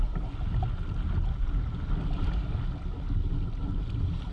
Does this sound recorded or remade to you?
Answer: recorded